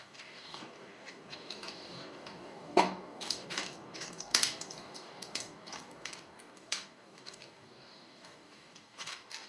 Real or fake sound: fake